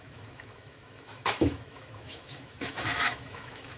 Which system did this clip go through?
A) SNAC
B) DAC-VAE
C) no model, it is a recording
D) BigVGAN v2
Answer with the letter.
B